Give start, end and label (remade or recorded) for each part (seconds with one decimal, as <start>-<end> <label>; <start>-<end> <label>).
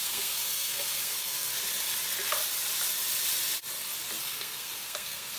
0.0-1.5 remade; 1.5-4.2 recorded; 4.2-5.4 remade